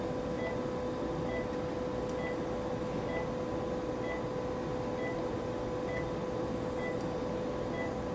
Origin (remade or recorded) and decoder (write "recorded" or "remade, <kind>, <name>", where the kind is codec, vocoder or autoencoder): recorded